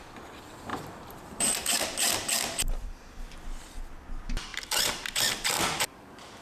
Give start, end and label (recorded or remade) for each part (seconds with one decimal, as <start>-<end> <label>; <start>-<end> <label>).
0.0-0.7 recorded; 0.7-3.1 remade; 3.1-6.4 recorded